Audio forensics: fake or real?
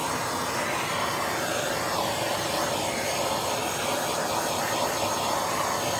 real